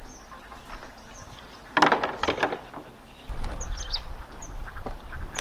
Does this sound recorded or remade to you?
recorded